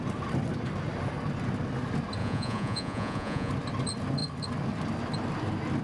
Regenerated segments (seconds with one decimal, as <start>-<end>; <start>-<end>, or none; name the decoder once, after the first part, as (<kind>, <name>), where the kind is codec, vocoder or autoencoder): 2.2-3.5 (vocoder, Vocos)